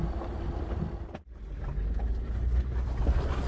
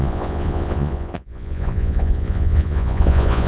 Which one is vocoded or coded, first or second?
second